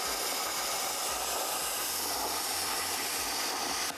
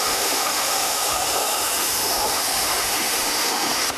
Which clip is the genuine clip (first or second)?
first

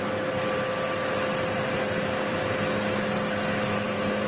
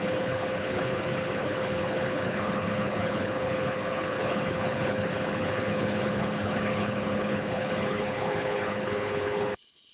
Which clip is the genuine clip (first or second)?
first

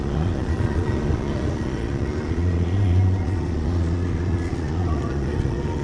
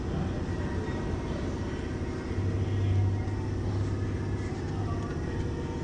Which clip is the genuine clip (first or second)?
second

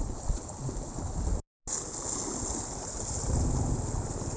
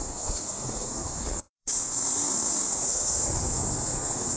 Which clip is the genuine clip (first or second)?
first